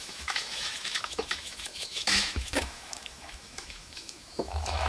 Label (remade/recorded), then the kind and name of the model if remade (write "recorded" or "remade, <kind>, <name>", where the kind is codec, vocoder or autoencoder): remade, autoencoder, DAC-VAE